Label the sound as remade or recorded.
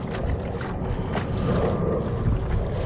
recorded